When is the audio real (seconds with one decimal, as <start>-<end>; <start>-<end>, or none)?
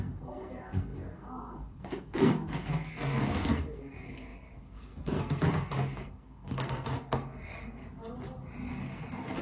7.8-8.7